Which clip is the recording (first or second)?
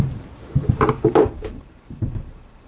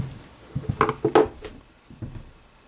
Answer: second